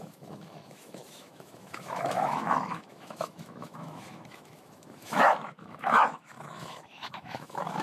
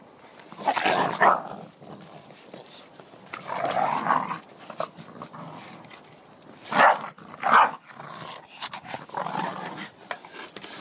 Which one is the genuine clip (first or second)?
second